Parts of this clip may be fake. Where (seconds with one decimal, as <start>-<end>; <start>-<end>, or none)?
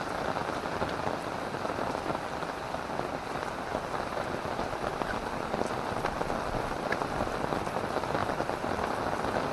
none